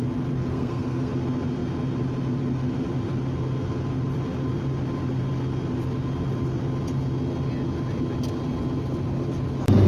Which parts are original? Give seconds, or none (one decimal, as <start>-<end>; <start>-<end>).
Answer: 0.0-0.5; 1.1-9.9